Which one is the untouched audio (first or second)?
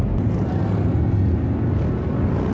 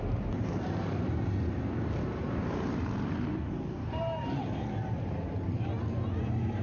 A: first